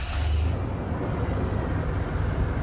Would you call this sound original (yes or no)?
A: yes